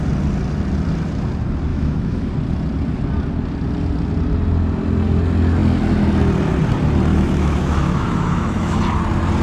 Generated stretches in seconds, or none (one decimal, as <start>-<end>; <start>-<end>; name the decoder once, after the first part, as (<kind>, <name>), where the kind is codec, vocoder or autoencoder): 1.7-2.3 (autoencoder, DAC-VAE); 7.1-8.8